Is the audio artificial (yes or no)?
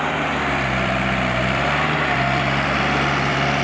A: yes